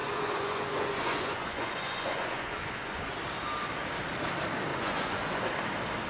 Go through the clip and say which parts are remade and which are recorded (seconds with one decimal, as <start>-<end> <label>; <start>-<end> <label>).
0.0-3.1 remade; 3.1-4.7 recorded; 4.7-5.4 remade; 5.4-6.1 recorded